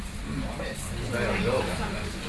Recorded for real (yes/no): yes